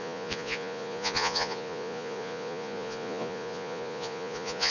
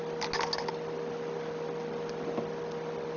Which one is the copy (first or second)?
first